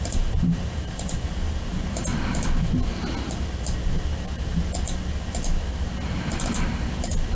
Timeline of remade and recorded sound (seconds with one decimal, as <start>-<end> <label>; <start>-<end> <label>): 0.0-2.1 remade; 2.1-6.4 recorded; 6.4-7.3 remade